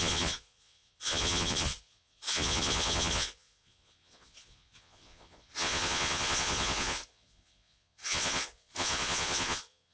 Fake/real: fake